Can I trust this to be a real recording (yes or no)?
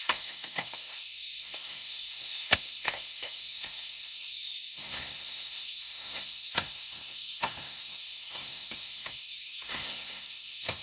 no